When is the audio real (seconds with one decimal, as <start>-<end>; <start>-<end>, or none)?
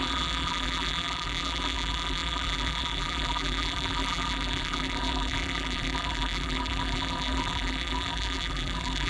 none